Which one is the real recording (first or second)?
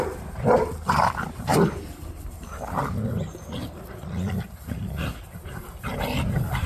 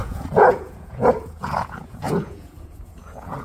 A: first